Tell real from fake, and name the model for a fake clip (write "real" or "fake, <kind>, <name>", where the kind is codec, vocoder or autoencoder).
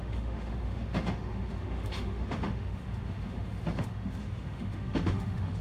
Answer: fake, autoencoder, DAC-VAE